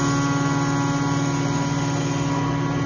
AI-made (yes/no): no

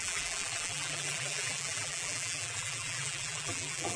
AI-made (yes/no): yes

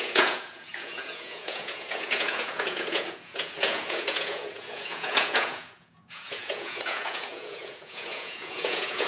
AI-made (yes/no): yes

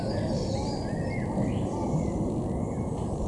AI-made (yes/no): no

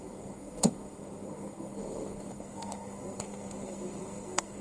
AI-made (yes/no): yes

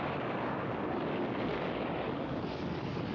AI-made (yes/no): yes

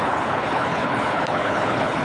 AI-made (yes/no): yes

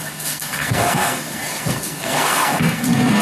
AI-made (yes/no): yes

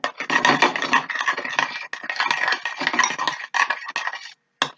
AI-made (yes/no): no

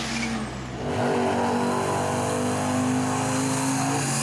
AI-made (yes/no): no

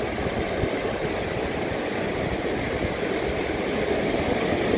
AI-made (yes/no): no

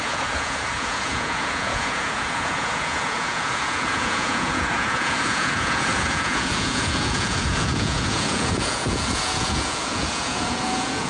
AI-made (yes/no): yes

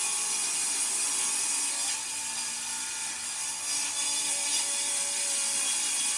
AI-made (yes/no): no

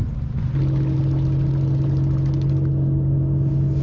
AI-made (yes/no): no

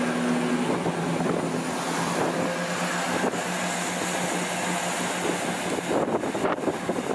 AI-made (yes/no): no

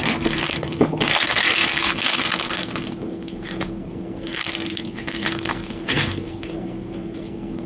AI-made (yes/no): yes